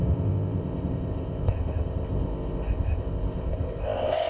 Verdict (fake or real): fake